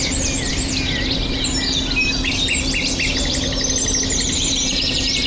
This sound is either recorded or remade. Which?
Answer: recorded